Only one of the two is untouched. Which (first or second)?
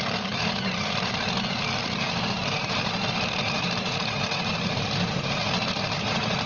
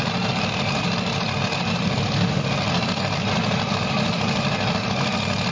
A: second